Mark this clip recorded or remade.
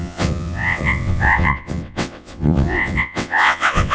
remade